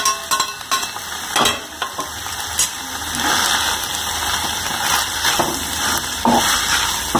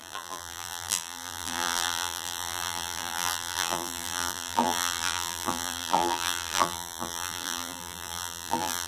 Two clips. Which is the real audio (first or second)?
first